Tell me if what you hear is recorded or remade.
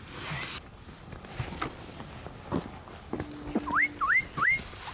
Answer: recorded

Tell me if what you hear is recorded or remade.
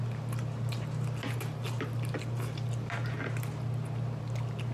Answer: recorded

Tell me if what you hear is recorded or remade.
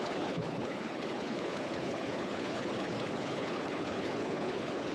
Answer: remade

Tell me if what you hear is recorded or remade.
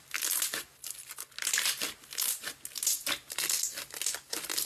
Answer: recorded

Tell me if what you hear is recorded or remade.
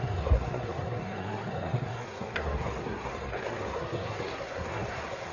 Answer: remade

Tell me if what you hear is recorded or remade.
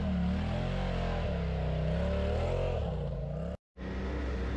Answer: recorded